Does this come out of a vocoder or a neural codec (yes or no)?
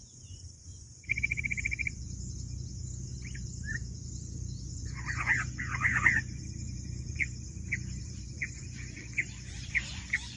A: yes